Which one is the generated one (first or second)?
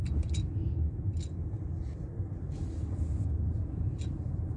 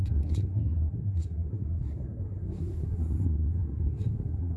second